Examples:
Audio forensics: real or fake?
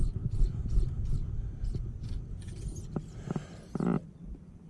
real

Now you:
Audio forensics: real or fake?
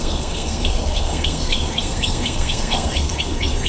fake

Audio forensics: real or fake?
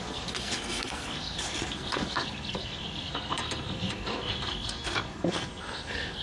fake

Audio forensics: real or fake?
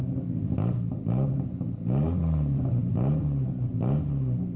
real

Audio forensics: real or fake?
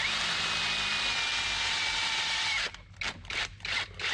real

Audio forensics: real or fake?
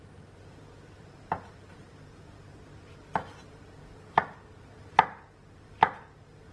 real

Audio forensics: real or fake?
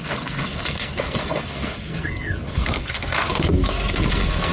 fake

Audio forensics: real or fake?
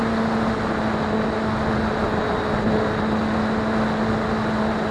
real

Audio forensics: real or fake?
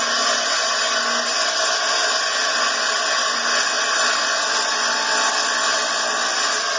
real